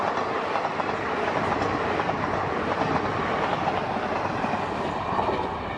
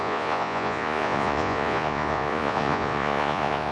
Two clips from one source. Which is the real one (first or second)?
first